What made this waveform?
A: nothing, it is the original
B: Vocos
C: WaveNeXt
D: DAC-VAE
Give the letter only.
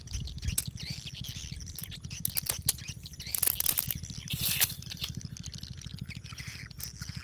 A